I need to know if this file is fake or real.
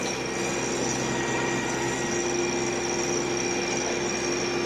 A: real